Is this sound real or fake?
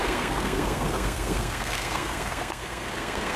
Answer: fake